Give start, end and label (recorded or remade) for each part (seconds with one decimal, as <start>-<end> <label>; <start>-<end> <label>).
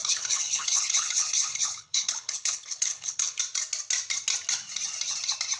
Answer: 0.0-3.4 remade; 3.4-5.6 recorded